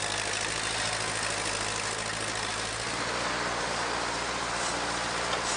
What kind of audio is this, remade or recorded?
recorded